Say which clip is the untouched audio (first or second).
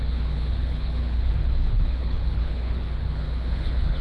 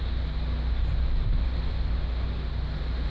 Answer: second